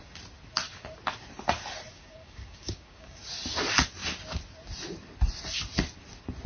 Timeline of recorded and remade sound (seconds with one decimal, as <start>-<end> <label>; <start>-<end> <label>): 0.0-1.9 recorded; 1.9-3.2 remade; 3.2-6.5 recorded